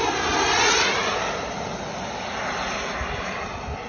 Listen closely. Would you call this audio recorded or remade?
recorded